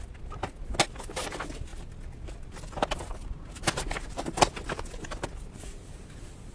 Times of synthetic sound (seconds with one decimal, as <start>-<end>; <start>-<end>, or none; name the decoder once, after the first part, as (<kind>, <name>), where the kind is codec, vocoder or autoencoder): none